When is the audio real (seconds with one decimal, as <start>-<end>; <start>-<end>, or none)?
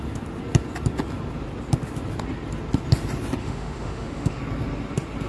0.0-3.4; 4.4-5.3